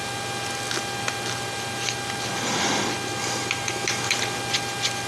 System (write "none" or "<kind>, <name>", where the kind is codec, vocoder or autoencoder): none